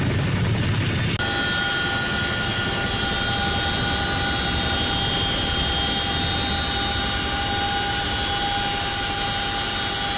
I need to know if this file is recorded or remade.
recorded